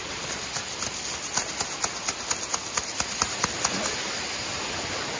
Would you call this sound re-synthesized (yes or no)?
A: no